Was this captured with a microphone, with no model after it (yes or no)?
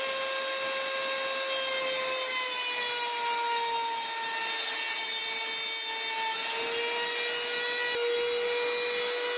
yes